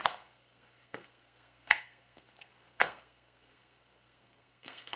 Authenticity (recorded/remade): remade